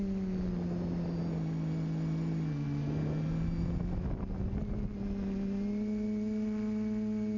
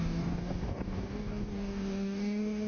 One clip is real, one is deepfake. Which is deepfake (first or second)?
second